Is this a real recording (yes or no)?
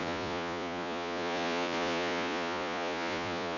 no